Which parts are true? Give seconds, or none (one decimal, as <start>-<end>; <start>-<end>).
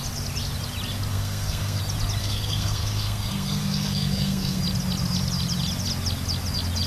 0.0-1.1; 1.8-2.2; 4.6-6.9